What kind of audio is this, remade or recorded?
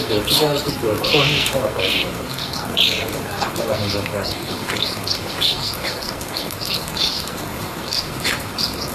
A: remade